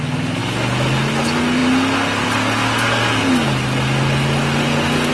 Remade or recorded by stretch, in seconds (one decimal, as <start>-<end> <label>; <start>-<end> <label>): 0.0-5.1 recorded